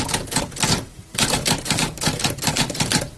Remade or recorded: remade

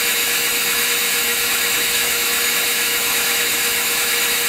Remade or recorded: remade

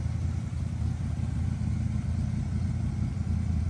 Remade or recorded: recorded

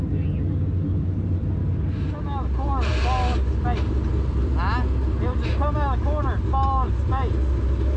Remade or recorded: recorded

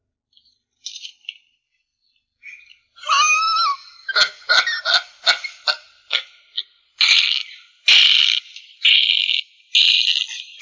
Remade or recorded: recorded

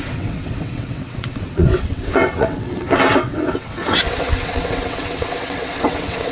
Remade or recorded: remade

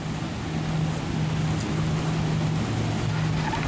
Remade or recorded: recorded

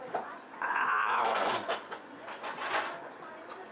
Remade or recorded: remade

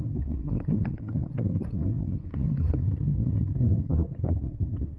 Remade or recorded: remade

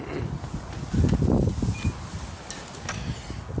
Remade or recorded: recorded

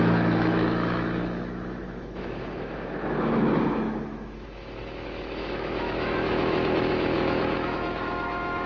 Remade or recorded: remade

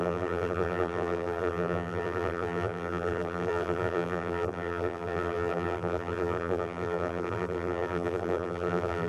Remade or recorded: remade